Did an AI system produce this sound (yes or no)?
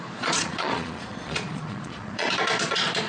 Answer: yes